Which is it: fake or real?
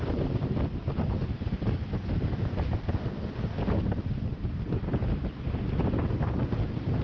real